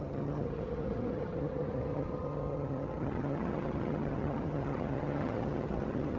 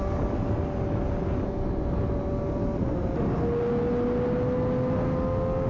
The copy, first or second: first